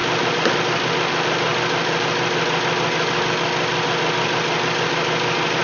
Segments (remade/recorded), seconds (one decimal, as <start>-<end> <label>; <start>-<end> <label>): 0.0-5.6 recorded